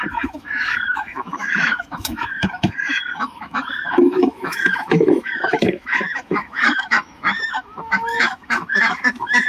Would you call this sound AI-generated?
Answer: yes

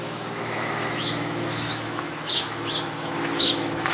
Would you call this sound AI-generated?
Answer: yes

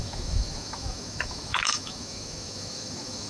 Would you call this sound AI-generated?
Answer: yes